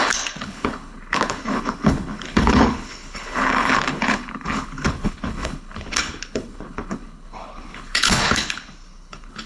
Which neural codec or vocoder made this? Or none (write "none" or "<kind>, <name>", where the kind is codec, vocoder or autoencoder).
codec, HILCodec